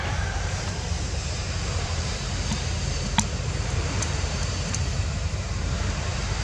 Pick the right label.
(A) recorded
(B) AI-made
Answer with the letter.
B